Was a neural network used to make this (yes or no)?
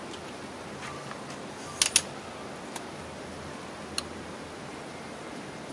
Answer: no